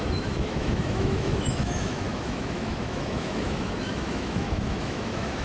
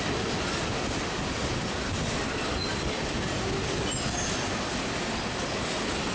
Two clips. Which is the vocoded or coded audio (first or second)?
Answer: first